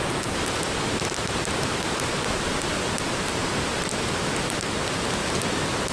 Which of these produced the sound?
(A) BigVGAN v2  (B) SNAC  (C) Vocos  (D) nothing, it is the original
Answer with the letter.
D